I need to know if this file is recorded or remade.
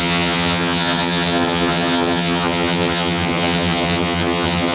remade